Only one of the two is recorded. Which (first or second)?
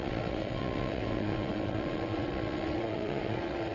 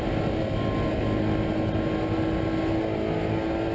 second